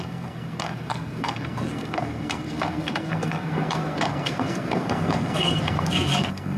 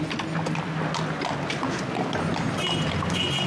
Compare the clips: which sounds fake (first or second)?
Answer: first